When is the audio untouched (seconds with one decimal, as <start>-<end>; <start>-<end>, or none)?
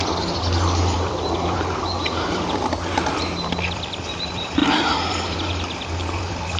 none